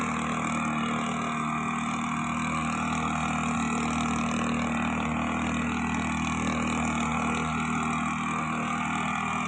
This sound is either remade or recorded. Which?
recorded